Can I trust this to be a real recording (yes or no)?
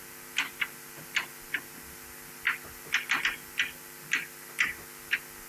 yes